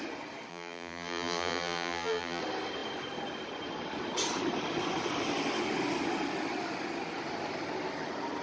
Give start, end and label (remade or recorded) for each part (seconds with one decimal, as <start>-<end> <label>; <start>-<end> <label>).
0.0-0.5 recorded; 0.5-2.4 remade; 2.4-8.4 recorded